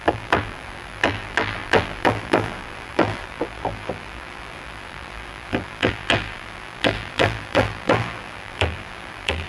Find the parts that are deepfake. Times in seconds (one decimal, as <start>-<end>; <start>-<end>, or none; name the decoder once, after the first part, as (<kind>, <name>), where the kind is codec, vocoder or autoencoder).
0.0-9.5 (vocoder, BigVGAN v2)